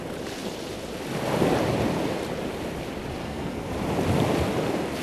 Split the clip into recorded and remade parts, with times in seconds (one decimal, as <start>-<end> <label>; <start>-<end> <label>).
0.0-3.2 recorded; 3.2-3.7 remade; 3.7-5.0 recorded